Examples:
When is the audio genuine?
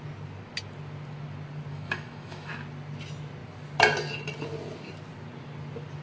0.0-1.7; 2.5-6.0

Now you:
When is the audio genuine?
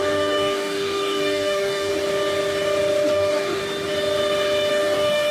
1.9-3.1; 3.6-4.7